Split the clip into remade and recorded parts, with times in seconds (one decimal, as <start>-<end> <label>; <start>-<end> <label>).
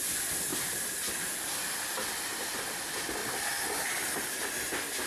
0.0-5.1 recorded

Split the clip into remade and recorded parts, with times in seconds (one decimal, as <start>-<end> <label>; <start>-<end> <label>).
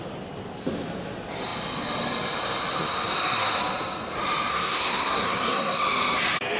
0.0-4.5 recorded; 4.5-5.8 remade; 5.8-6.6 recorded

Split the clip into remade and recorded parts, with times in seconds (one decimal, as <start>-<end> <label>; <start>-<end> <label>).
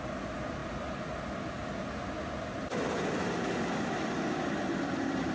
0.0-5.3 recorded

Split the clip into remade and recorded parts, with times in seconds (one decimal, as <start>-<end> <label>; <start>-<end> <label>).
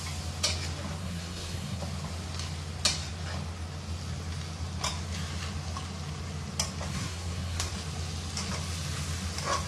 0.0-1.0 recorded; 1.0-1.8 remade; 1.8-6.9 recorded; 6.9-7.7 remade; 7.7-9.7 recorded